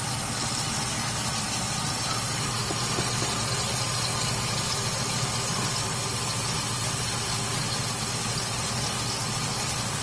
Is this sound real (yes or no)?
yes